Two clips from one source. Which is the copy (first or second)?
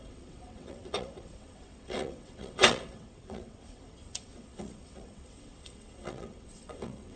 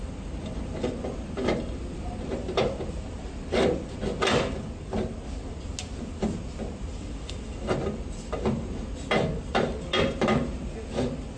first